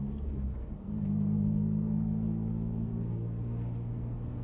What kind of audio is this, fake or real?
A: fake